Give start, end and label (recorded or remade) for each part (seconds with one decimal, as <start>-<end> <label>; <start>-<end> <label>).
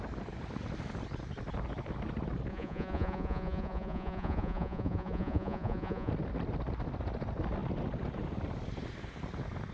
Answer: 0.0-2.5 recorded; 2.5-6.1 remade; 6.1-9.7 recorded